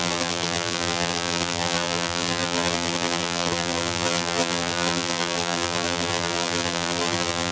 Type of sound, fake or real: fake